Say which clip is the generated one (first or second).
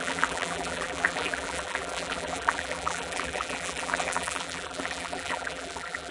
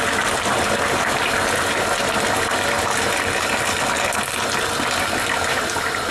first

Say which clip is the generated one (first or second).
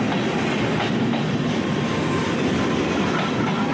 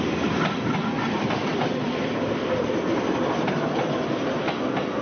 second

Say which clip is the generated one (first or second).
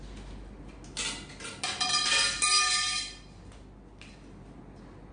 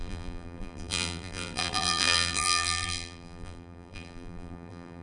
second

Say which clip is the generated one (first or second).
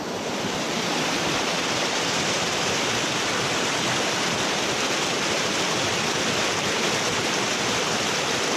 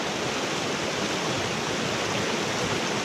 first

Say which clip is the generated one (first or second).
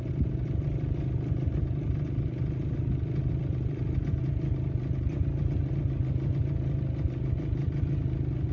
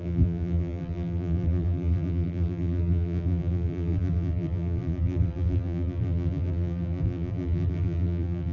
second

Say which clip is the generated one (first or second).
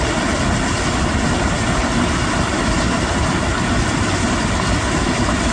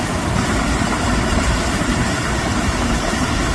second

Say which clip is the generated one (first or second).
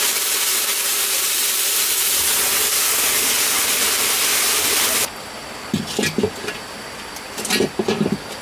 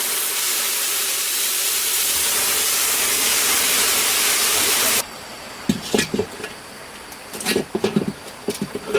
second